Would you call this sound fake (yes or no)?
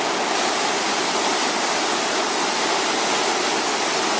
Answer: no